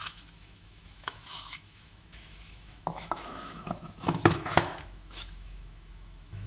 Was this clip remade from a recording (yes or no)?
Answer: yes